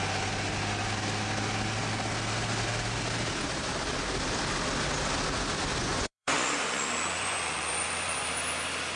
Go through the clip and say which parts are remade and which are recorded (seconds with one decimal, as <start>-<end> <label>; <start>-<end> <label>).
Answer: 0.0-5.8 recorded; 5.8-8.3 remade; 8.3-9.0 recorded